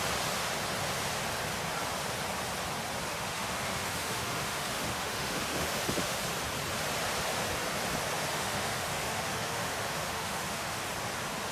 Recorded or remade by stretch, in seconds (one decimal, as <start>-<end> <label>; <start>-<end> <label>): 0.0-3.1 recorded; 3.1-6.2 remade; 6.2-8.3 recorded; 8.3-10.8 remade; 10.8-11.5 recorded

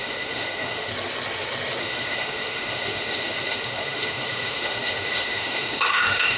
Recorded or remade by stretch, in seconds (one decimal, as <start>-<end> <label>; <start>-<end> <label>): 0.0-0.9 remade; 0.9-1.8 recorded; 1.8-6.4 remade

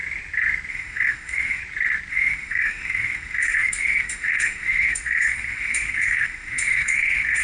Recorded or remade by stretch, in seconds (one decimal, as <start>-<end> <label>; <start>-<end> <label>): 0.0-0.7 recorded; 0.7-1.6 remade; 1.6-2.1 recorded; 2.1-7.4 remade

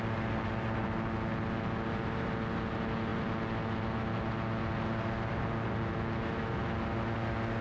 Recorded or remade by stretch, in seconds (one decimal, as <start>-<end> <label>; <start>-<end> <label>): 0.0-7.6 recorded